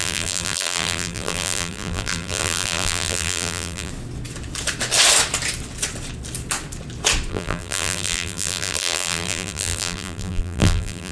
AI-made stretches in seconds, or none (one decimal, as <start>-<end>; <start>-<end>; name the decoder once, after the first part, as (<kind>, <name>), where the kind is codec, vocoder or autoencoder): 0.0-3.9 (vocoder, BigVGAN v2); 7.3-11.1